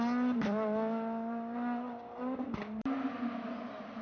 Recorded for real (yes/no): yes